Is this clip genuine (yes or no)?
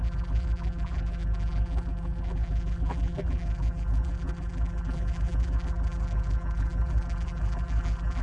no